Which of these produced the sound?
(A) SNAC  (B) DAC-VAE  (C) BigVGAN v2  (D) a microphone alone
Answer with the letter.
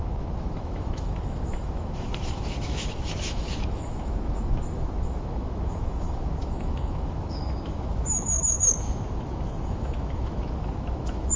B